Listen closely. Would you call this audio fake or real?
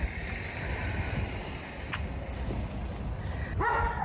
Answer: real